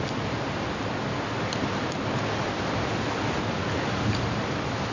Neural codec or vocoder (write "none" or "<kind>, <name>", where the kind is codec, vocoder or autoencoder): none